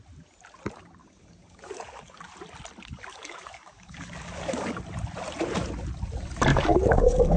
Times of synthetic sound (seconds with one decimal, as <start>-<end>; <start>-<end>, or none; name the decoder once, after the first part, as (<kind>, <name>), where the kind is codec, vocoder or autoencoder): 1.0-2.3 (codec, DAC); 3.1-4.8; 6.5-7.4